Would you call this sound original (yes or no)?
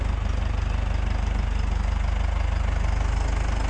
yes